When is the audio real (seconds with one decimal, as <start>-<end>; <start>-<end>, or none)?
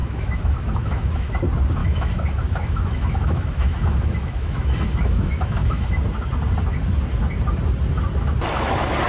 1.4-1.8; 6.0-9.1